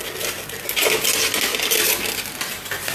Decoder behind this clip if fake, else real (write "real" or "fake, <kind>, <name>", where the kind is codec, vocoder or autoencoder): real